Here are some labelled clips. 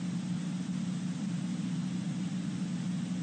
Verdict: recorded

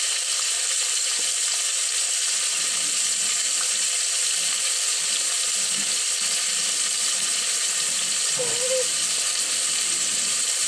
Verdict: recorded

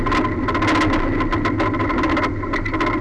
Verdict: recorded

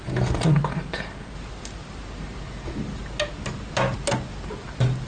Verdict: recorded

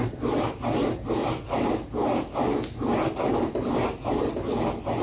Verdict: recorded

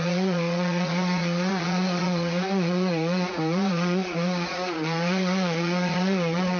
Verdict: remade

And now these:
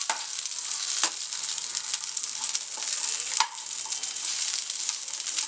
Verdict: recorded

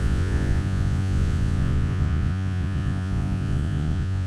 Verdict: remade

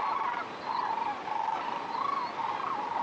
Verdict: recorded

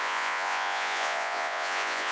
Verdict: remade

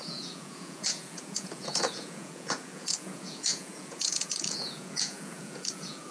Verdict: remade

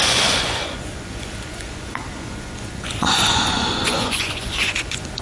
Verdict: remade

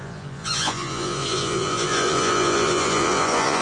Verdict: remade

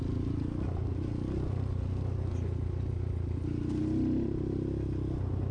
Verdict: recorded